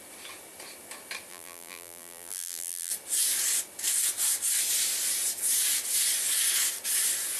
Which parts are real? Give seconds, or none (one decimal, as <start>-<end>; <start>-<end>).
0.0-1.3; 2.9-7.4